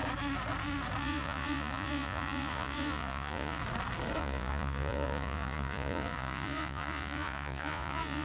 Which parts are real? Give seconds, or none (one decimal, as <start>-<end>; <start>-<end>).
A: 0.0-1.0; 3.6-4.2